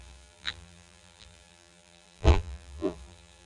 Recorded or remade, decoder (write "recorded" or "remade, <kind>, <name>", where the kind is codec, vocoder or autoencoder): remade, vocoder, BigVGAN v2